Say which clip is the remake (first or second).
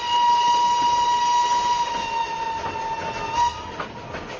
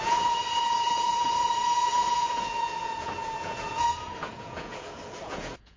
second